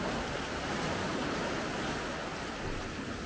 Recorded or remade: recorded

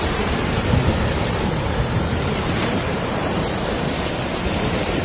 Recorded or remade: remade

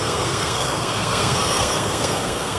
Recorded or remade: remade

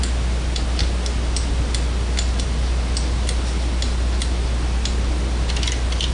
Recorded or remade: recorded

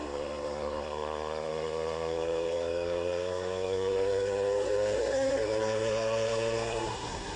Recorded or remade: remade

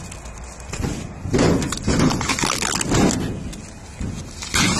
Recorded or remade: recorded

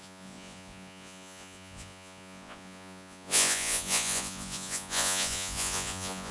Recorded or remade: remade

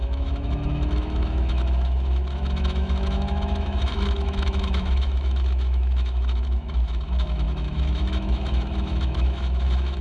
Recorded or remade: remade